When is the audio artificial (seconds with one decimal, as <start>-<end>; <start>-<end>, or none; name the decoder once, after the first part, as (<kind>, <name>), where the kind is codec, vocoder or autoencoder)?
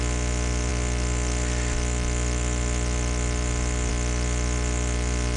none